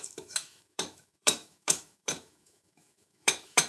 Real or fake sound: fake